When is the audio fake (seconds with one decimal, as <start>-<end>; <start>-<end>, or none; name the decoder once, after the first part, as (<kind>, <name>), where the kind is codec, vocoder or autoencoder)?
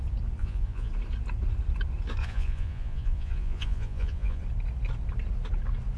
0.4-0.9 (vocoder, Vocos); 2.2-4.4